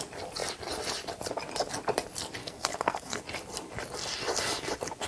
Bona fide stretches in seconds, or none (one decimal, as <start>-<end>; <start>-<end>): 0.0-2.4; 3.2-5.1